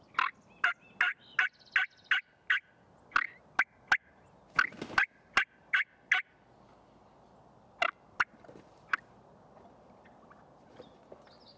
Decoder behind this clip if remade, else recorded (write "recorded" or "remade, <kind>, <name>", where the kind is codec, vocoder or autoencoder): recorded